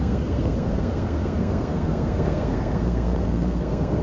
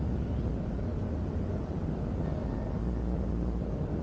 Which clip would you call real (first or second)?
second